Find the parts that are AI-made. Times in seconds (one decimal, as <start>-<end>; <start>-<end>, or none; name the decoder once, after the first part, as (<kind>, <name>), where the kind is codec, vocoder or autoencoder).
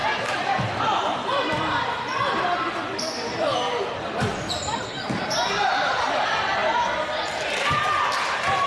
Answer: 0.0-4.3 (vocoder, BigVGAN v2); 5.5-8.7